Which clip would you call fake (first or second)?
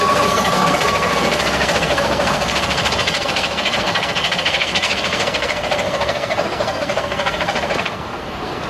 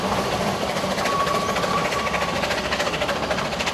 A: first